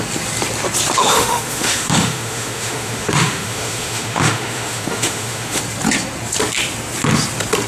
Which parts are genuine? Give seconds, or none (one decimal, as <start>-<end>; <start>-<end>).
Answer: 0.0-1.0; 5.6-7.7